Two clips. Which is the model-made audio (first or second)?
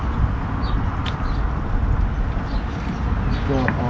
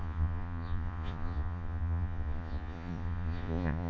second